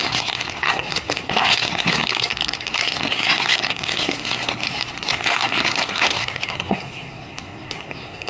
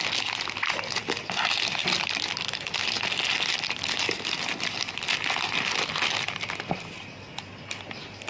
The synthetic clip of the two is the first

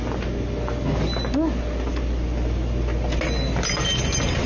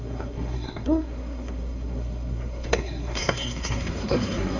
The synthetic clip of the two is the second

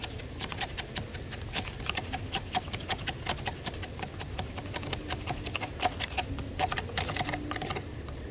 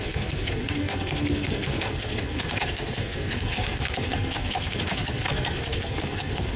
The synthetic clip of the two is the second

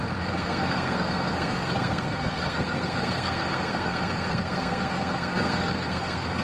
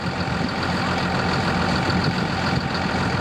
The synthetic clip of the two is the first